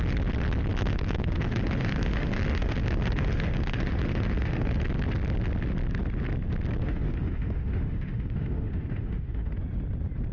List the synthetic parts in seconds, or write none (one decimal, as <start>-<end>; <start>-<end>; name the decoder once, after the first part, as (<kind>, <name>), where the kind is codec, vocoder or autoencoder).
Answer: 0.8-4.8 (autoencoder, DAC-VAE); 6.8-9.5